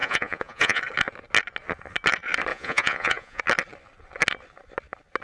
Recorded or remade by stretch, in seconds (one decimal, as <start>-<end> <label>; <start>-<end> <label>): 0.0-0.8 remade; 0.8-2.5 recorded; 2.5-3.4 remade; 3.4-5.2 recorded